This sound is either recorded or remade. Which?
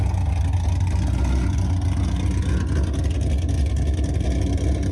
recorded